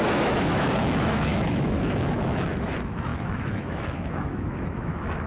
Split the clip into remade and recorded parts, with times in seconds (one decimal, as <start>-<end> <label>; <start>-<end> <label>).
0.0-5.3 remade